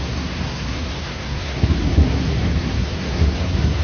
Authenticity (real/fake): fake